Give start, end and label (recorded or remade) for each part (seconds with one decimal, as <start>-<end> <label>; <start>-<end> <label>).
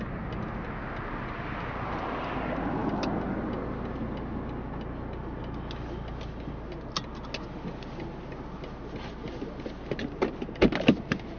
0.0-11.4 recorded